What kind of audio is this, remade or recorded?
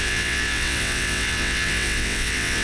remade